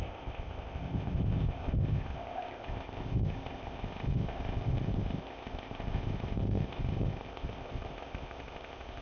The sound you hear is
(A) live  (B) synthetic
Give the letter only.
B